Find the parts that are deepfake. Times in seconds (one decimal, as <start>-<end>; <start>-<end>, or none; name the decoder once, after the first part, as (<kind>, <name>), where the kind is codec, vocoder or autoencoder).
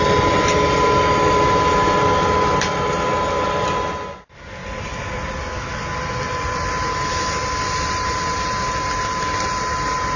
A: none